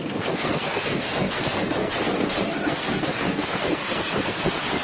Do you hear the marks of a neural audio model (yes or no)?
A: yes